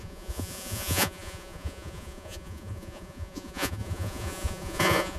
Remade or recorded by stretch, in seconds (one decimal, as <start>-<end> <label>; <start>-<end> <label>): 0.0-5.2 remade